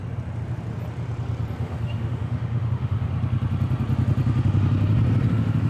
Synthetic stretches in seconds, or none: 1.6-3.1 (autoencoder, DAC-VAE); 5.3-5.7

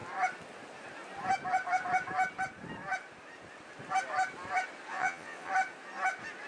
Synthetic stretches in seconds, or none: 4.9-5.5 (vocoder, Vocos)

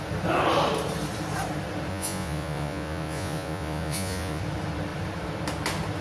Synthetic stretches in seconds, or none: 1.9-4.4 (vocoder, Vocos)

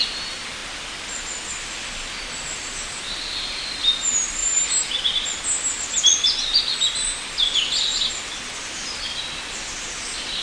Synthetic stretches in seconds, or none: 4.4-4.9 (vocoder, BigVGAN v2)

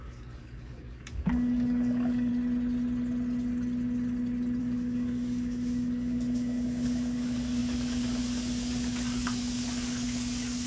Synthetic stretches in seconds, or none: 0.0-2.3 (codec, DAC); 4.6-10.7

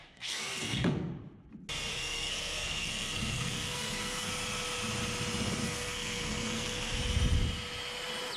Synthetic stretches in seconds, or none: 0.0-1.1 (codec, SNAC); 1.9-4.3; 5.6-7.0

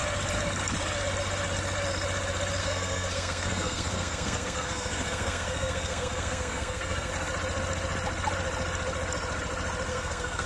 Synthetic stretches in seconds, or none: 2.6-7.1 (codec, SNAC); 9.9-10.5

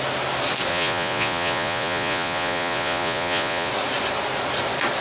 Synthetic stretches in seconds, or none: 0.7-3.7 (vocoder, Vocos)